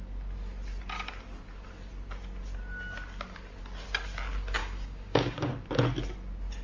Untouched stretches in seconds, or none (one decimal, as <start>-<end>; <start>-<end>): 0.0-4.6; 5.5-6.6